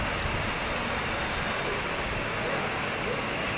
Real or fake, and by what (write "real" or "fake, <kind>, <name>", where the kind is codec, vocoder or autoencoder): real